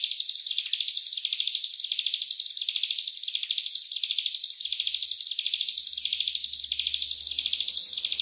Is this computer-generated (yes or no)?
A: no